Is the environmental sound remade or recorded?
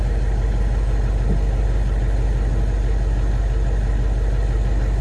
recorded